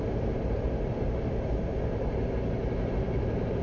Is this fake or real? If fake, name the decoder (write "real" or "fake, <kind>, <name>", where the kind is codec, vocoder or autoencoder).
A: real